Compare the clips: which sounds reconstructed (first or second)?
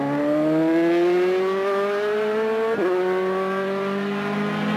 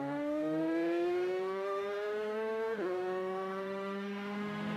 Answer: second